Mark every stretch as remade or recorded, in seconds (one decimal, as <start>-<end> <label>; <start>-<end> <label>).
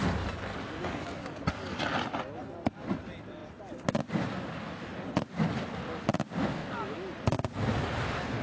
0.0-0.5 recorded; 0.5-1.8 remade; 1.8-8.4 recorded